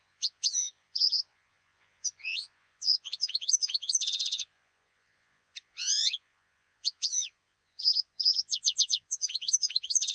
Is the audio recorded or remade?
remade